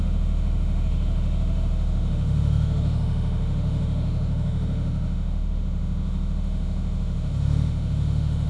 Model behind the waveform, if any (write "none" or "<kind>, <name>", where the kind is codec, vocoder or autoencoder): autoencoder, DAC-VAE